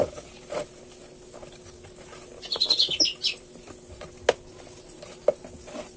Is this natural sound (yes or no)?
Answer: yes